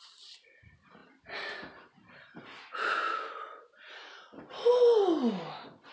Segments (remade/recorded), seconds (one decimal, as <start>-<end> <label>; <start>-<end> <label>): 0.0-5.9 recorded